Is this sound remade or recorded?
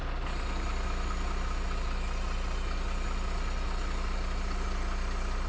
recorded